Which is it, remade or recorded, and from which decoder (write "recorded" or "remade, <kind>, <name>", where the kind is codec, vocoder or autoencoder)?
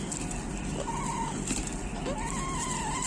recorded